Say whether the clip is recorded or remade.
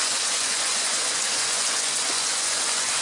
remade